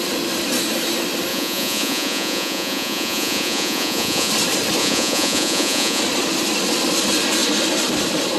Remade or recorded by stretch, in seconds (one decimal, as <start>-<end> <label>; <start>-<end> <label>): 0.0-1.3 recorded; 1.3-4.3 remade; 4.3-4.8 recorded; 4.8-6.0 remade; 6.0-8.4 recorded